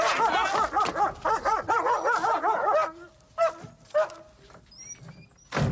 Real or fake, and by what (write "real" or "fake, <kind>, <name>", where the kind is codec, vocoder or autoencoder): real